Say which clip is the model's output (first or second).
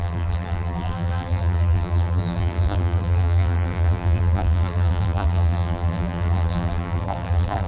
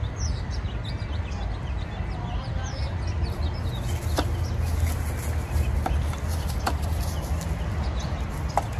first